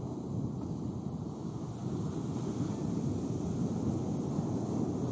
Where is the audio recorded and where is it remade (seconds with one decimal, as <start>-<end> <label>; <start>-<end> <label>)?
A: 0.0-5.1 recorded